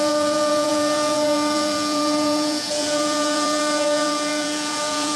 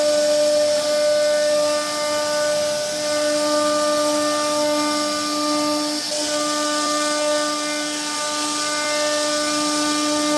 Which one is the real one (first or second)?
second